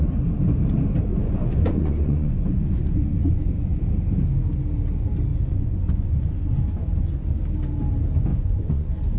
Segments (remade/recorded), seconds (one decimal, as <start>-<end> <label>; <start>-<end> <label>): 0.0-1.1 recorded; 1.1-3.8 remade; 3.8-5.3 recorded; 5.3-6.9 remade; 6.9-8.3 recorded; 8.3-9.2 remade